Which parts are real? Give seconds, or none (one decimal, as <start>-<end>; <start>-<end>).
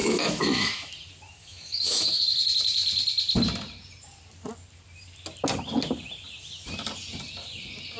0.9-1.4; 2.2-8.0